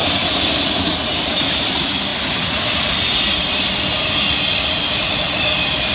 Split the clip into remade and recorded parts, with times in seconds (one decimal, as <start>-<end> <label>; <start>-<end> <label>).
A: 0.0-1.5 recorded; 1.5-2.1 remade; 2.1-5.4 recorded; 5.4-5.9 remade

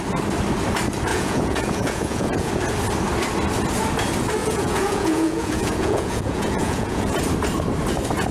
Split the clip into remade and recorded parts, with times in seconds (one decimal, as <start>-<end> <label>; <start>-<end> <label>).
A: 0.0-1.1 recorded; 1.1-2.5 remade; 2.5-4.4 recorded; 4.4-7.2 remade; 7.2-8.3 recorded

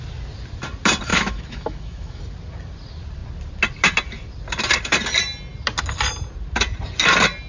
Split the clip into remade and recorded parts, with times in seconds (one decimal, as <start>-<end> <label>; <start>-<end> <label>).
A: 0.0-1.1 recorded; 1.1-2.2 remade; 2.2-7.5 recorded